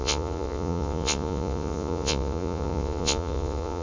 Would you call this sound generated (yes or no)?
yes